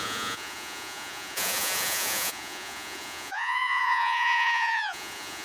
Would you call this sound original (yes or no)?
no